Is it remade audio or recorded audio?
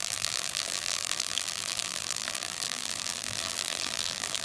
remade